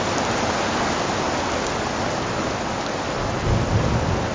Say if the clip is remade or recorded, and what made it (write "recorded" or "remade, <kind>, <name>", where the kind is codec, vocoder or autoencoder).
recorded